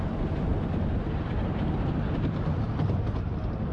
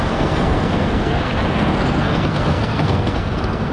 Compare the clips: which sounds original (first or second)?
first